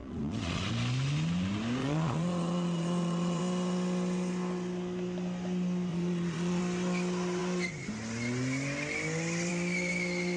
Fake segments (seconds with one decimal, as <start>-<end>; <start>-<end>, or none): 0.0-0.7; 1.8-3.4; 5.9-6.6